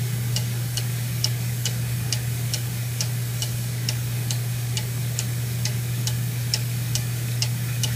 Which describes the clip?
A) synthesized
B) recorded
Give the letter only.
A